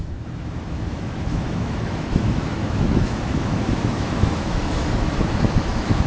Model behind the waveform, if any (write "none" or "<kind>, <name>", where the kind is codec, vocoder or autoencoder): autoencoder, DAC-VAE